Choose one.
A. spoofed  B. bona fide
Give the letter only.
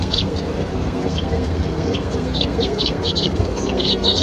A